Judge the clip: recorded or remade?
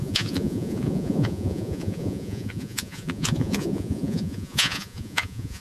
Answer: remade